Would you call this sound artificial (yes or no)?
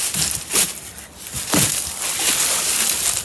no